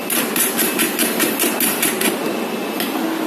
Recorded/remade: recorded